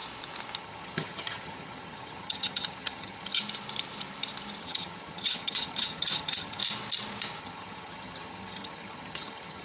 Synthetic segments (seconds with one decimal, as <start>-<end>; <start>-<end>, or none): 0.6-3.4; 4.6-6.6; 7.4-9.6